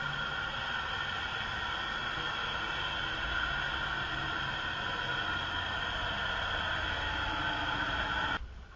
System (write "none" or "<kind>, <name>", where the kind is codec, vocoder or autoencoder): none